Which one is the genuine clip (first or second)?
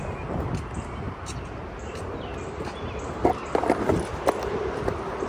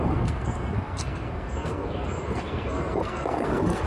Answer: first